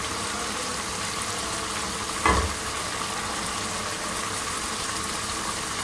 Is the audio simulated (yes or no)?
no